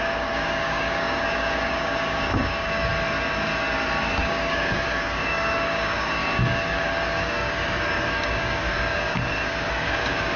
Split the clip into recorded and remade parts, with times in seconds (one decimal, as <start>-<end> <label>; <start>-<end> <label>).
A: 0.0-2.9 remade; 2.9-4.2 recorded; 4.2-10.4 remade